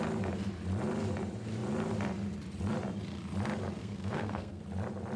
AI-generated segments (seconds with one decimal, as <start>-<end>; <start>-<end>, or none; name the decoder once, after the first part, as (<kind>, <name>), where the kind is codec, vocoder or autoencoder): 3.8-4.6 (codec, SNAC)